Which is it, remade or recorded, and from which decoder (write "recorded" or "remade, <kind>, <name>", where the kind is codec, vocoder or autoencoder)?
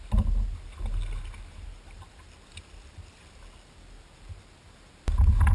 recorded